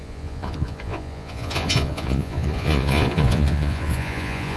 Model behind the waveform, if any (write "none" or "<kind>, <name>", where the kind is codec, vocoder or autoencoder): vocoder, Vocos